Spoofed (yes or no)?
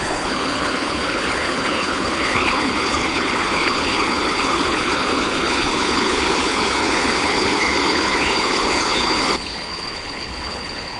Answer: yes